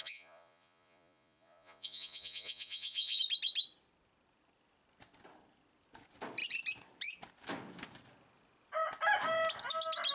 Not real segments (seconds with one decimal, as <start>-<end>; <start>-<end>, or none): 0.0-3.2